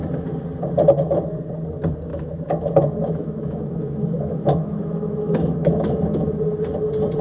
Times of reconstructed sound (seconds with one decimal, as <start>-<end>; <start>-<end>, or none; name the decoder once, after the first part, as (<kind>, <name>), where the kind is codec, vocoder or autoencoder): 2.1-6.4 (autoencoder, DAC-VAE)